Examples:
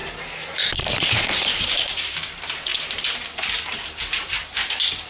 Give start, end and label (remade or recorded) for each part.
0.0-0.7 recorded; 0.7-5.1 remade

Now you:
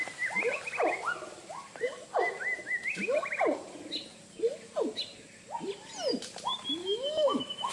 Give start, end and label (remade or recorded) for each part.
0.0-6.8 recorded; 6.8-7.7 remade